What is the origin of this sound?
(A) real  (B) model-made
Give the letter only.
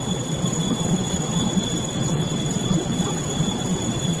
B